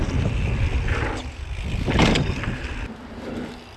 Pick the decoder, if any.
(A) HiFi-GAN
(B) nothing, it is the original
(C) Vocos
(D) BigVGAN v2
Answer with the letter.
B